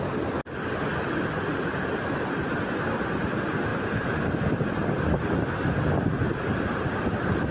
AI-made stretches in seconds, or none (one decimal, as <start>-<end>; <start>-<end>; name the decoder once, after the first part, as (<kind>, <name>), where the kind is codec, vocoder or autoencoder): none